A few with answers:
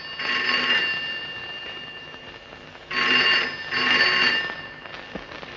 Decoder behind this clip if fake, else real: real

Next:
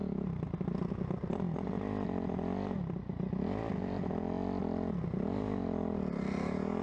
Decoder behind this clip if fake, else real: real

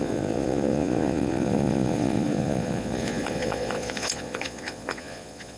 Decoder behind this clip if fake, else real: fake, vocoder, Vocos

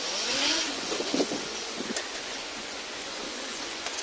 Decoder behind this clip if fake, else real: fake, vocoder, Vocos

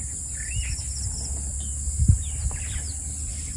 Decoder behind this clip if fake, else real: real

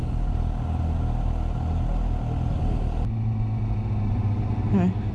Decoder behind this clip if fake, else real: real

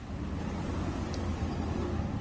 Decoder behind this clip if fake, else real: real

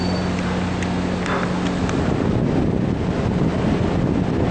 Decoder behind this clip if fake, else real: real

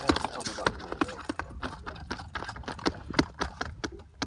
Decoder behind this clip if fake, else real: real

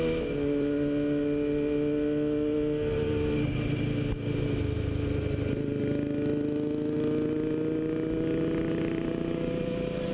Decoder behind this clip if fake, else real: real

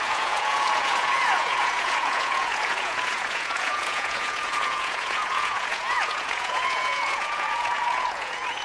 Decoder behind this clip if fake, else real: fake, vocoder, Vocos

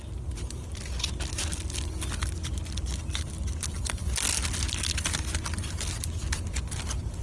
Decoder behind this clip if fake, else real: real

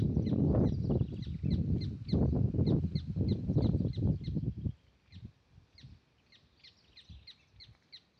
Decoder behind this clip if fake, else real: real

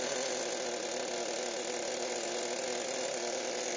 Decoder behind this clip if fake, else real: real